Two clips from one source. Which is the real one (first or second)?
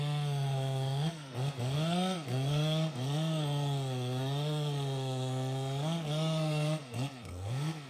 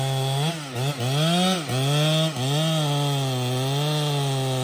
second